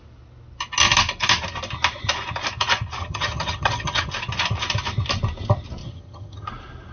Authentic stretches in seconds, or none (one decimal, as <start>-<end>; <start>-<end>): 0.0-3.0; 4.1-5.8; 6.5-6.9